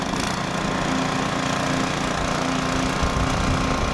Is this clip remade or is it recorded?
recorded